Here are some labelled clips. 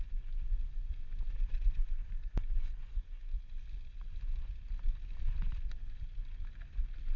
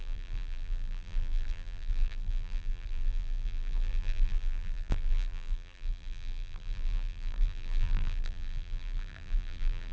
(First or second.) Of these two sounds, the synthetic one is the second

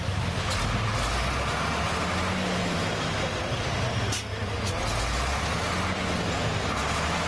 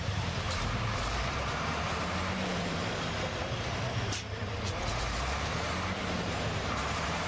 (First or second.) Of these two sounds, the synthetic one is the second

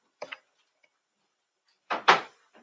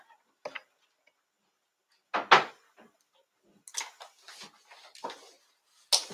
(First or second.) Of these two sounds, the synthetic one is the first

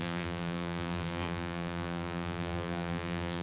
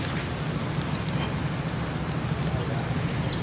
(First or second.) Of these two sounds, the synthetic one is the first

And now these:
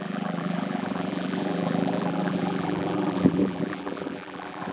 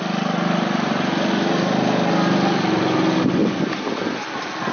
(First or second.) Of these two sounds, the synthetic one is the first